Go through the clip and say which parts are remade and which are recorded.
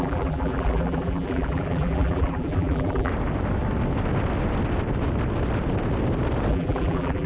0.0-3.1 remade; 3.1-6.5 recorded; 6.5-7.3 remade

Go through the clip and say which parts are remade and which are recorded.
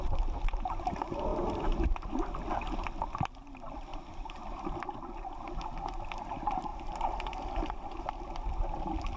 0.0-3.9 recorded; 3.9-4.7 remade; 4.7-9.2 recorded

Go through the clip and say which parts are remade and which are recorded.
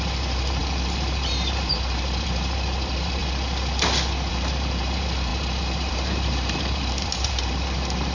0.0-3.2 remade; 3.2-4.3 recorded; 4.3-8.1 remade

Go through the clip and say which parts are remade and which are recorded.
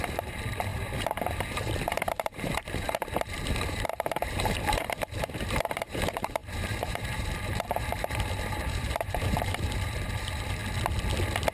0.0-10.6 remade; 10.6-11.5 recorded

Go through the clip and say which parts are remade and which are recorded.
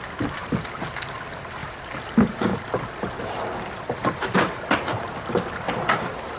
0.0-1.6 recorded; 1.6-2.1 remade; 2.1-6.4 recorded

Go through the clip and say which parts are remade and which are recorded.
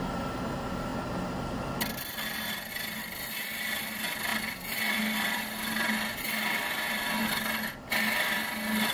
0.0-8.9 recorded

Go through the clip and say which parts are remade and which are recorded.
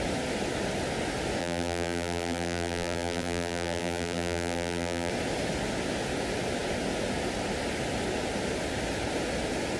0.0-1.4 recorded; 1.4-5.1 remade; 5.1-9.8 recorded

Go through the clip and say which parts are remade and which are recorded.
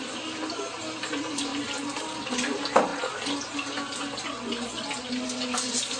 0.0-1.5 remade; 1.5-2.0 recorded; 2.0-2.9 remade; 2.9-5.1 recorded; 5.1-6.0 remade